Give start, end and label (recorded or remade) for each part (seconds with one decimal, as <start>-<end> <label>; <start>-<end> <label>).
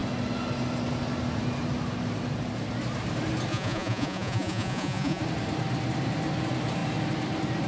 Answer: 0.0-3.5 recorded; 3.5-5.2 remade; 5.2-7.7 recorded